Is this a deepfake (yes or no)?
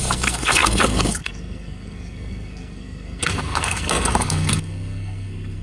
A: yes